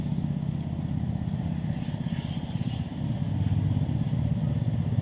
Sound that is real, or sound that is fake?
real